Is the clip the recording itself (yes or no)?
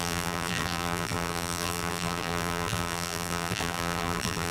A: no